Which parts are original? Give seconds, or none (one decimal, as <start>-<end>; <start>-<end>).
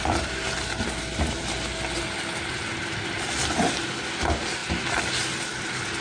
0.0-6.0